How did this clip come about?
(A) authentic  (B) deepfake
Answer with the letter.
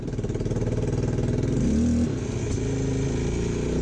A